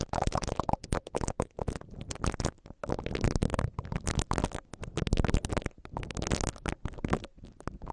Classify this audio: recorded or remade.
recorded